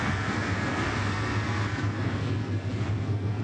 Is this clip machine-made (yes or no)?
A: yes